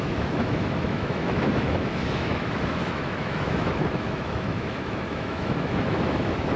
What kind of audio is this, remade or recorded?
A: remade